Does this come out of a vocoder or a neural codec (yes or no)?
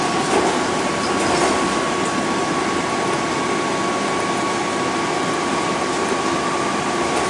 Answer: no